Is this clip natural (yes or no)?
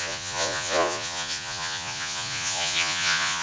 no